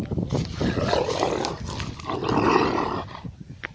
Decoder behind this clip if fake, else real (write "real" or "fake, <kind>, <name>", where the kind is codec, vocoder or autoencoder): real